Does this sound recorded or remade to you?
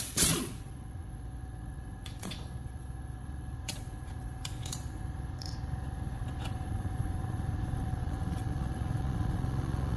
remade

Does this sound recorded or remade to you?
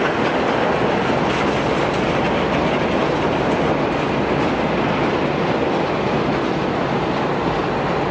recorded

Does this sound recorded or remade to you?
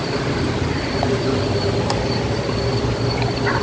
recorded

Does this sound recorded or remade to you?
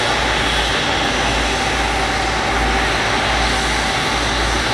recorded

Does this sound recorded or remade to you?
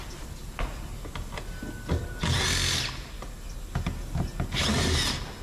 recorded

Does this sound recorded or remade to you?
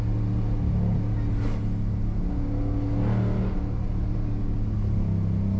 recorded